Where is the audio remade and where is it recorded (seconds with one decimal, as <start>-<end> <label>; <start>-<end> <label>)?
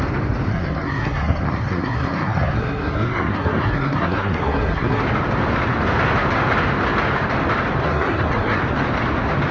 0.0-0.5 recorded; 0.5-5.0 remade; 5.0-7.8 recorded; 7.8-8.6 remade; 8.6-9.5 recorded